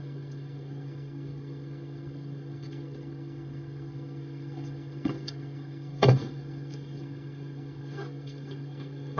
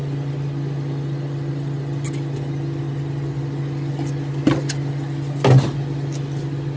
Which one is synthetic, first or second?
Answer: first